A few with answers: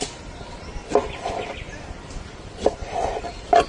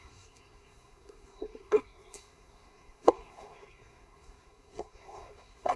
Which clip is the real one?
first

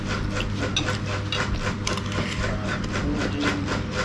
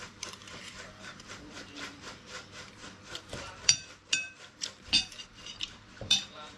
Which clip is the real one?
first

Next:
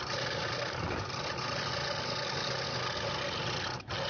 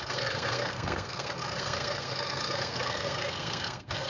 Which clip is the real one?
first